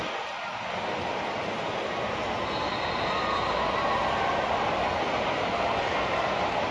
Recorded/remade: recorded